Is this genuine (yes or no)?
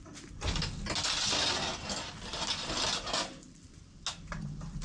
yes